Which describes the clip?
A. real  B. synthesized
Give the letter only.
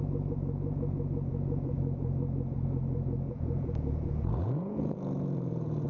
B